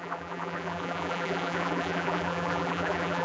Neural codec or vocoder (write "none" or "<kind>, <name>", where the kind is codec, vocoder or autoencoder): vocoder, BigVGAN v2